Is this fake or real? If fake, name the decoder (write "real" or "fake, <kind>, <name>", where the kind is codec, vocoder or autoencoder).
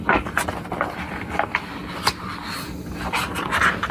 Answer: real